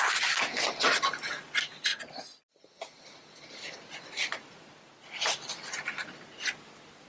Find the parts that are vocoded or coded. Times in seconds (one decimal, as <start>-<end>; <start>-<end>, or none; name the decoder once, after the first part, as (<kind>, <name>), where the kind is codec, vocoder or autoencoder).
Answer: 1.9-5.9 (vocoder, BigVGAN v2)